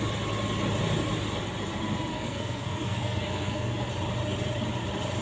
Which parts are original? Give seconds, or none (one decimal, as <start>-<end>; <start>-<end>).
0.0-2.1; 3.9-5.2